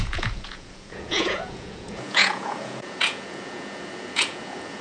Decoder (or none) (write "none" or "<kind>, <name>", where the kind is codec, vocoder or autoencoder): vocoder, Vocos